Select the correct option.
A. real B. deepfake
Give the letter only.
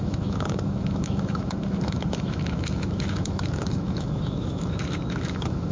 B